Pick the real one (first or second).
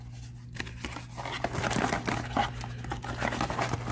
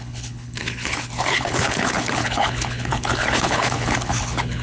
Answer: first